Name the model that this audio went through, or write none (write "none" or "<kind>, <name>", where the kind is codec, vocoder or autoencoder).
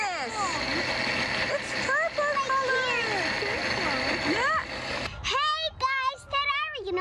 none